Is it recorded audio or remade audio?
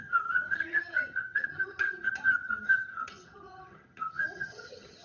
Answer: remade